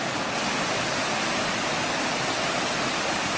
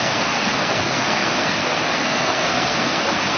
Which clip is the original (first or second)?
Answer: first